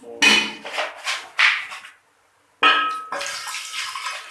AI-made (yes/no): no